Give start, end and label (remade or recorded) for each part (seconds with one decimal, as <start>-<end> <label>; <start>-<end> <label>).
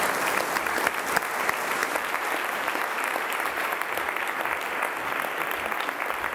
0.0-1.8 recorded; 1.8-3.7 remade; 3.7-6.3 recorded